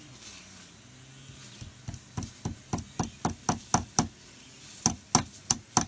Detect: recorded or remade recorded